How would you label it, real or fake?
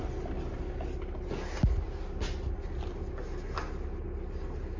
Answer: real